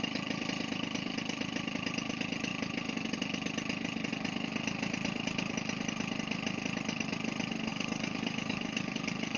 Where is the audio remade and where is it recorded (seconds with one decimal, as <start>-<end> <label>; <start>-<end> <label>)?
0.0-7.7 recorded; 7.7-9.4 remade